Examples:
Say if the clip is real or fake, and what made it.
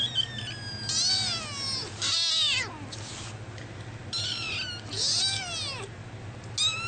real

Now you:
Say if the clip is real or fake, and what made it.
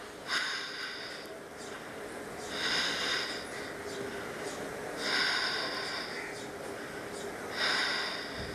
real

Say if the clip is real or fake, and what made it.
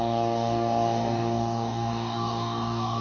fake, codec, DAC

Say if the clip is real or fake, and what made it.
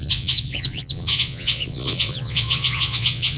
fake, vocoder, Vocos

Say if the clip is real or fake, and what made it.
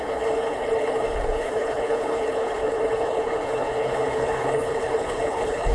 fake, codec, HILCodec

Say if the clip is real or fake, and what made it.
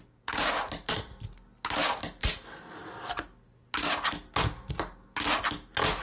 real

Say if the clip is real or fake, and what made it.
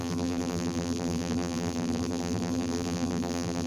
fake, vocoder, BigVGAN v2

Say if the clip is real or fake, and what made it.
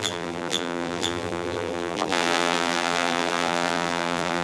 fake, vocoder, BigVGAN v2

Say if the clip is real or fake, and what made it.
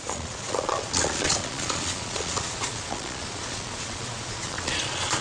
fake, vocoder, Vocos